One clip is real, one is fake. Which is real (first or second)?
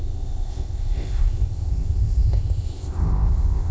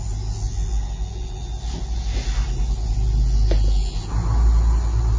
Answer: second